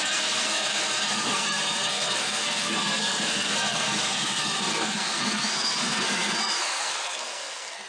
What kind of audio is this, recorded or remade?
remade